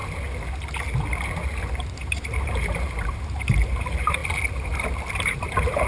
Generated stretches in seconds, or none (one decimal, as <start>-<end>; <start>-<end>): 1.7-4.2; 5.1-5.9